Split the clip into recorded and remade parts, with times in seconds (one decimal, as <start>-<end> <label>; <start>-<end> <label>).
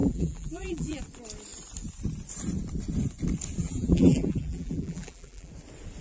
0.0-1.0 remade; 1.0-3.6 recorded; 3.6-5.5 remade; 5.5-6.0 recorded